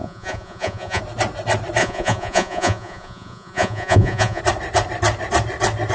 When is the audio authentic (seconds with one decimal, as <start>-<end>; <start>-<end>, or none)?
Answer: 1.0-1.8; 4.4-5.9